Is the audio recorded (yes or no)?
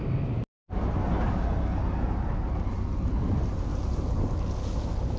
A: yes